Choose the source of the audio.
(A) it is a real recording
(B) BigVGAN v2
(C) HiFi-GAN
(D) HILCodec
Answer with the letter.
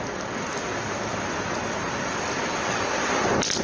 A